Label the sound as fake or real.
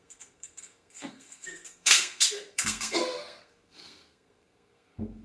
fake